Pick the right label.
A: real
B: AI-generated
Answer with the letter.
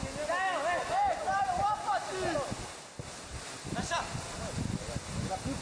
A